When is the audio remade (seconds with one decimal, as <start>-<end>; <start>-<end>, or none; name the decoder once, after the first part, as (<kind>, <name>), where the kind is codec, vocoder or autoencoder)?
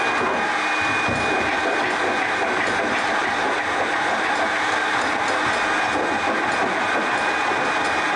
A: 3.2-4.3 (vocoder, BigVGAN v2)